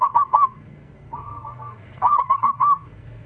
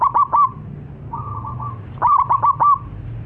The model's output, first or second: first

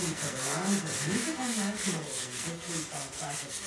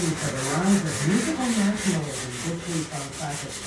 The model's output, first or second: first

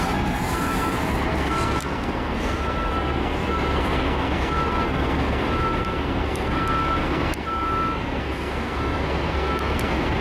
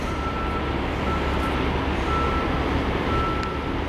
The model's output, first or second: first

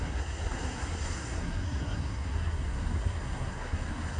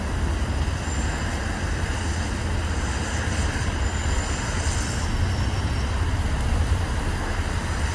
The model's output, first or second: first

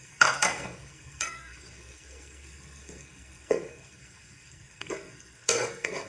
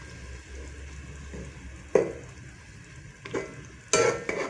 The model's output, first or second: first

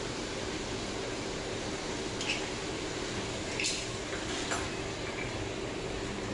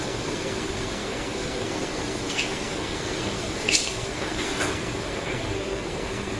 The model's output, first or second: second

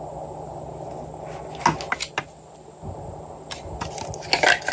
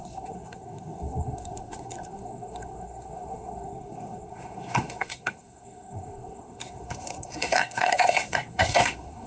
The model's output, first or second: second